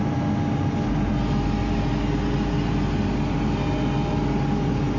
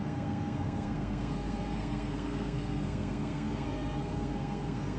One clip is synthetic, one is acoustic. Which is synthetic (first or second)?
second